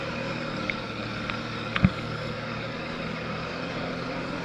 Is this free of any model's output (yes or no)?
no